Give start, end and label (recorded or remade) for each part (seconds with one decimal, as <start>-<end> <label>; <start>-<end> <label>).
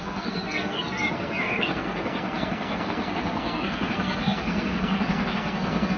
0.0-6.0 remade